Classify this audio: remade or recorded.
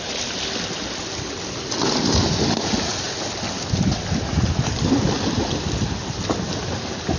recorded